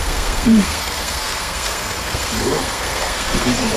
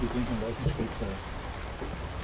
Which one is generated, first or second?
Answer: first